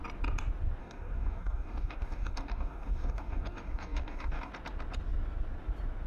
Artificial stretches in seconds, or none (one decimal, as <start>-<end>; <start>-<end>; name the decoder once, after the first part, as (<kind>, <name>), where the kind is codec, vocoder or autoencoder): 0.8-4.5 (codec, DAC)